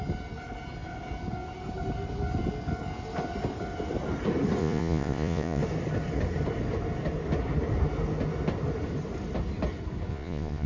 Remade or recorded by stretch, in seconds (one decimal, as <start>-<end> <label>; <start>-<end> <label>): 0.0-4.6 recorded; 4.6-5.6 remade; 5.6-10.1 recorded; 10.1-10.7 remade